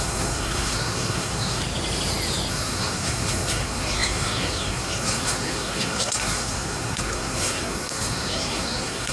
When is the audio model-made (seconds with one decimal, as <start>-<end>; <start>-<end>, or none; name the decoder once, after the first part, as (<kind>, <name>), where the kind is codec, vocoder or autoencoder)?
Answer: 0.0-1.6 (codec, SNAC); 2.5-9.1